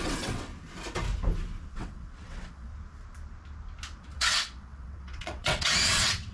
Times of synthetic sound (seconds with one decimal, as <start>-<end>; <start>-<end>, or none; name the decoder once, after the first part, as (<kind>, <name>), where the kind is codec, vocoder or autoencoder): 0.0-0.5 (vocoder, WaveNeXt); 1.7-2.7; 4.0-6.3